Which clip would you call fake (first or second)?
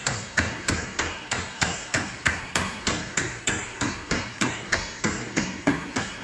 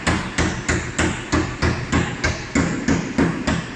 first